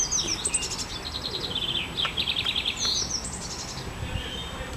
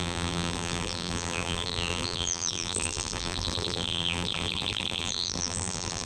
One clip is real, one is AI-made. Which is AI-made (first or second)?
second